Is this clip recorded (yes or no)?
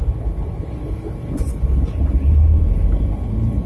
yes